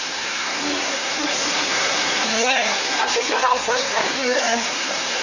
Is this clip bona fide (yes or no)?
no